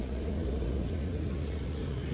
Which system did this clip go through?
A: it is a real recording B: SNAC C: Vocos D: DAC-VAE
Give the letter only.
C